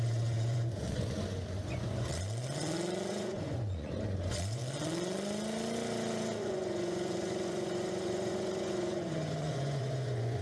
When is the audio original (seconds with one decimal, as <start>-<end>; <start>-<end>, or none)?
2.1-3.1; 4.6-6.4